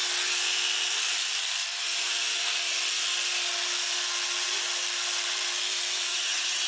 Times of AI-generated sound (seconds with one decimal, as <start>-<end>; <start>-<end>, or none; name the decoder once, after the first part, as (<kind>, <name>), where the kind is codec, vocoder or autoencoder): 6.1-6.7 (vocoder, HiFi-GAN)